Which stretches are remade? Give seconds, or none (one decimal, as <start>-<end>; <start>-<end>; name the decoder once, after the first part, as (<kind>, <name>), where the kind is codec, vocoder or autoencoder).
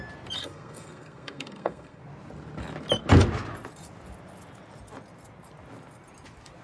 0.4-2.0 (codec, SNAC)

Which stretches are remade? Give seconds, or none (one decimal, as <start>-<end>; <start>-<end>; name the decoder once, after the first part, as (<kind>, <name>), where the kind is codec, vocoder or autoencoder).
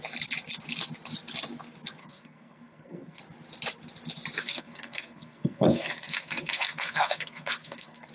2.0-3.2 (codec, SNAC); 4.4-8.1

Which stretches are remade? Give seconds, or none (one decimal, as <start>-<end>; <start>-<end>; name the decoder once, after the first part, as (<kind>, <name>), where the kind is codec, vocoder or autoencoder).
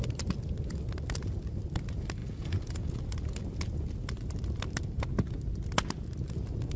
2.2-3.0 (vocoder, Vocos)